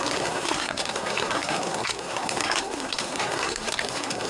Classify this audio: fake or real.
fake